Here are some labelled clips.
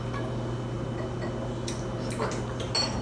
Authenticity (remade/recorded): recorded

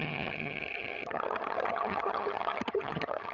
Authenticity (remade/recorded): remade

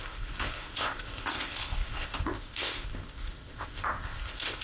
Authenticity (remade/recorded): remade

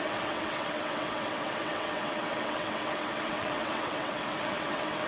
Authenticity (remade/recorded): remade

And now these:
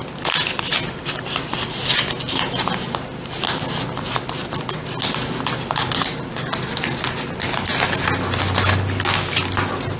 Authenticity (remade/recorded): recorded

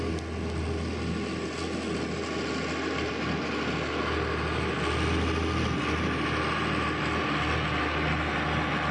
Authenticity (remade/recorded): recorded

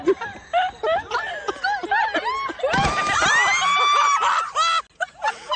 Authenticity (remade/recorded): recorded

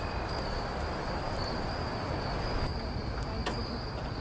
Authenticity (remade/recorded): recorded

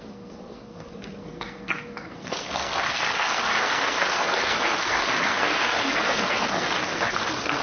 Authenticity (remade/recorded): remade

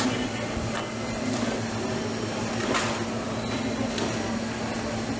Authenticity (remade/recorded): recorded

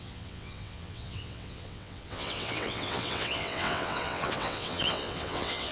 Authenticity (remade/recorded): remade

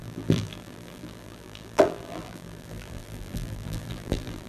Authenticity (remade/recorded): remade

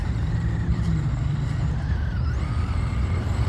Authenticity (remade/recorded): recorded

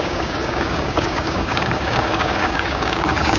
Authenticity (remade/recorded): remade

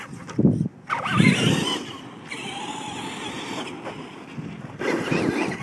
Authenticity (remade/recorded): recorded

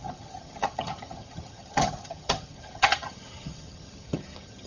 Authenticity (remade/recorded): remade